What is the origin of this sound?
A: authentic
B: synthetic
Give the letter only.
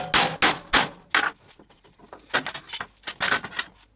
A